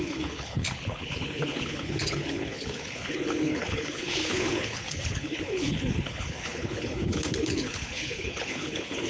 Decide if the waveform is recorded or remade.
remade